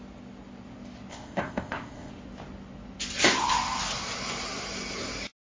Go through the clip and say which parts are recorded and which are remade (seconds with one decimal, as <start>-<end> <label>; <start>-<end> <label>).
0.0-1.1 recorded; 1.1-2.1 remade; 2.1-5.4 recorded